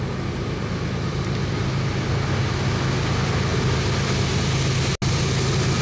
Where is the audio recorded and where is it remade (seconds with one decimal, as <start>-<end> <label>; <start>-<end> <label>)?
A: 0.0-5.8 recorded